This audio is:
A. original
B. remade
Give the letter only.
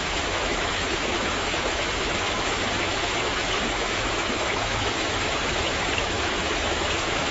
B